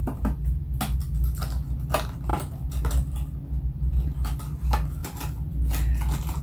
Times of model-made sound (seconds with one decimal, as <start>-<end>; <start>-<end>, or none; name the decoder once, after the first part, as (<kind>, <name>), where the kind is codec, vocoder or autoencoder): none